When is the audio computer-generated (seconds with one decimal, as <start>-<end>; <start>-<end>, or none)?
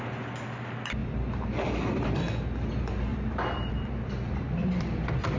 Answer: 1.0-2.2; 3.1-5.4